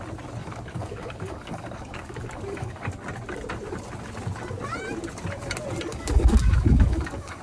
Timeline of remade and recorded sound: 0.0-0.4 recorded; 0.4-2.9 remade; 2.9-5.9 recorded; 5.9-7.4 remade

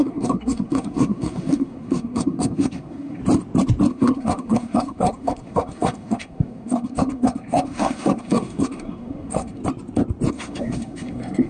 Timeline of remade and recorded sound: 0.0-3.2 remade; 3.2-3.9 recorded; 3.9-9.6 remade; 9.6-10.3 recorded; 10.3-11.5 remade

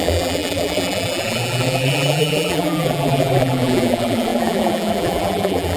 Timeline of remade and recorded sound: 0.0-5.8 remade

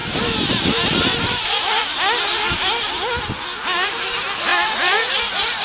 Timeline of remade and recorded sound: 0.0-5.6 recorded

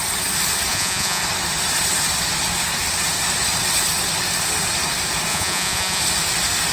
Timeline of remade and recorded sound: 0.0-0.7 recorded; 0.7-1.2 remade; 1.2-5.3 recorded; 5.3-6.0 remade; 6.0-6.7 recorded

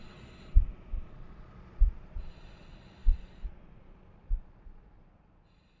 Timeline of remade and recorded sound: 0.0-5.8 remade